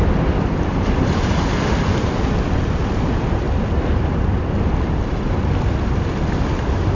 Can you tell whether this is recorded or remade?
recorded